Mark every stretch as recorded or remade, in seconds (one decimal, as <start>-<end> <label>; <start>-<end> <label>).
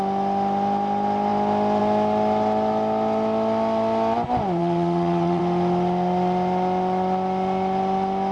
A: 0.0-4.6 recorded; 4.6-5.4 remade; 5.4-8.3 recorded